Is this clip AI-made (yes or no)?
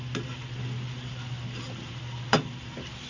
no